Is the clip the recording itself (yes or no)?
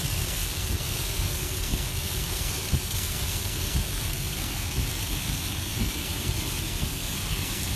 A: no